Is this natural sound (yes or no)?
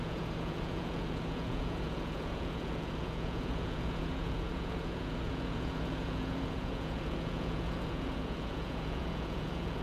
no